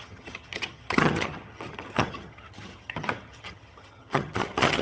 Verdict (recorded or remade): remade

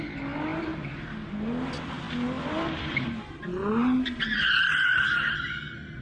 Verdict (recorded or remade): recorded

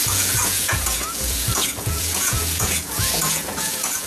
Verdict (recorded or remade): remade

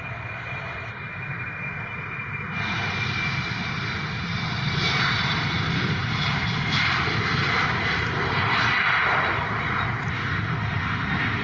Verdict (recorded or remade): recorded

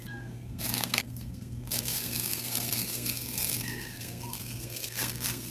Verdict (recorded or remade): remade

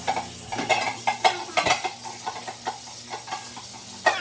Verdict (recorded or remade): recorded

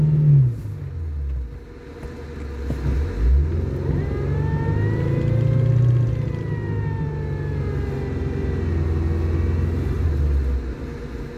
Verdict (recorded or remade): recorded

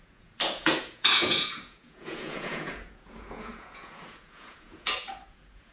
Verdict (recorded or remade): remade